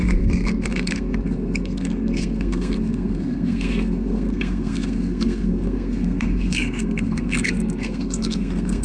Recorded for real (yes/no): no